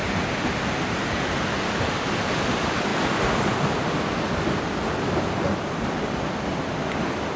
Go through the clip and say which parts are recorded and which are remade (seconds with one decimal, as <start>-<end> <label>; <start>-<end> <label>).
0.0-7.4 recorded